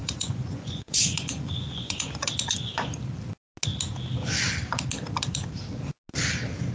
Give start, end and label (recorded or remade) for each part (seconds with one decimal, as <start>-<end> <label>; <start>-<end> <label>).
0.0-2.9 remade; 2.9-6.7 recorded